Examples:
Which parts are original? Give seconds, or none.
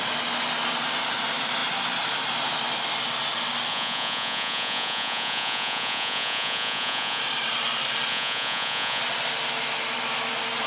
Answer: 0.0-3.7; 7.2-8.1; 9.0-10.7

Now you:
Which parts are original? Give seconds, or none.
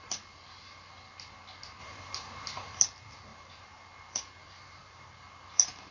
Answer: 0.0-1.8; 2.8-3.3; 3.8-4.4; 5.1-5.9